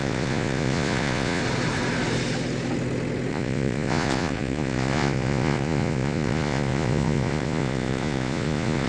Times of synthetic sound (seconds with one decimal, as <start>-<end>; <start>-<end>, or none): 0.0-1.4; 3.3-8.9